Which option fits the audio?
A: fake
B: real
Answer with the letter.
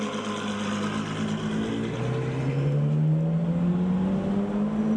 B